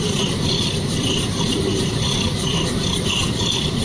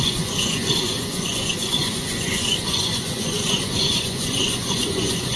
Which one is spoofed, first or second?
second